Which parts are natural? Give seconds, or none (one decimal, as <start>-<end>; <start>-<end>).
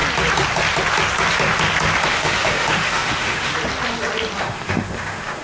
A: 0.0-2.1; 3.5-4.4